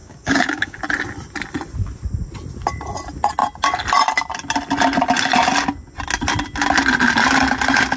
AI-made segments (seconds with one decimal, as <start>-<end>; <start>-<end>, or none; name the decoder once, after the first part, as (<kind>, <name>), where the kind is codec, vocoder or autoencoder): 0.0-0.8 (codec, DAC)